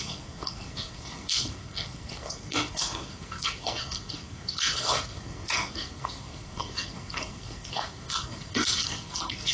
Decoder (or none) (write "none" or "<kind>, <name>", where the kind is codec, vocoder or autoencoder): codec, SNAC